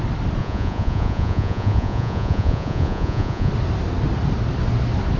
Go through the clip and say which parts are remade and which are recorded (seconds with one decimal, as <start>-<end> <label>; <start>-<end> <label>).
0.0-0.4 recorded; 0.4-3.5 remade; 3.5-5.2 recorded